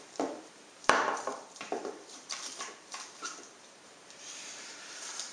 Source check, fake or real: fake